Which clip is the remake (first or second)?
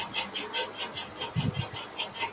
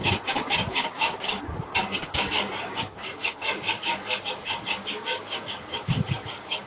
second